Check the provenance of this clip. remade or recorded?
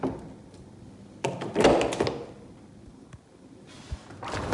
recorded